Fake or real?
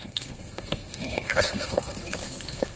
fake